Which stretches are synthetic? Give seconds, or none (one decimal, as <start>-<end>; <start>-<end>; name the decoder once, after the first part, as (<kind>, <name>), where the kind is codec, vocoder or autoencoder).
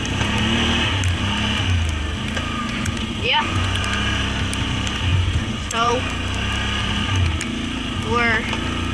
2.6-3.8 (vocoder, Vocos); 5.1-5.9